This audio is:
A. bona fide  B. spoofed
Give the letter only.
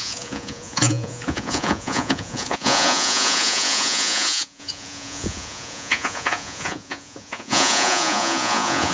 B